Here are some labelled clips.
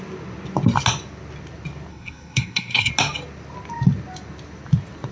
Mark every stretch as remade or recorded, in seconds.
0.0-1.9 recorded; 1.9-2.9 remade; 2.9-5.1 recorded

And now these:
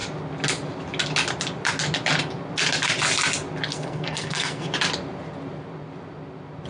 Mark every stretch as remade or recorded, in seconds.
0.0-3.7 recorded; 3.7-4.7 remade; 4.7-6.7 recorded

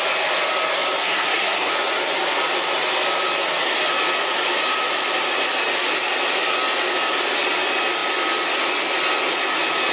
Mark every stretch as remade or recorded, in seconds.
0.0-1.0 recorded; 1.0-1.7 remade; 1.7-9.9 recorded

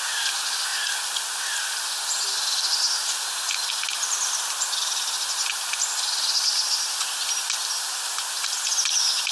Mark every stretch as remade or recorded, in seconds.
0.0-9.3 recorded

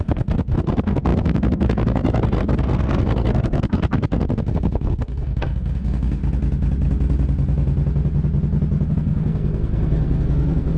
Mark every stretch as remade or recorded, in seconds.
0.0-6.2 remade; 6.2-8.9 recorded; 8.9-10.8 remade

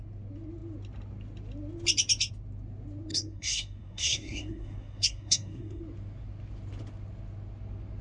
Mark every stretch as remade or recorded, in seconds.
0.0-3.1 recorded; 3.1-5.8 remade; 5.8-8.0 recorded

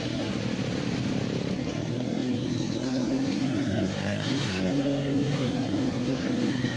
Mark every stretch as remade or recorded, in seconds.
0.0-0.4 remade; 0.4-1.5 recorded; 1.5-6.8 remade

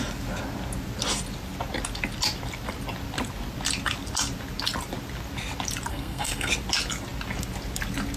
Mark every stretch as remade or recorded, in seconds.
0.0-5.9 recorded; 5.9-6.5 remade; 6.5-8.2 recorded